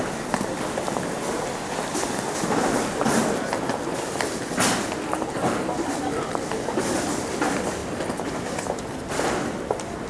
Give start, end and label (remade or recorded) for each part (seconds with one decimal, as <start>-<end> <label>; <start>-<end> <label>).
0.0-10.1 recorded